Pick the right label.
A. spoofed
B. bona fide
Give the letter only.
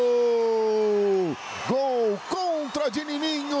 B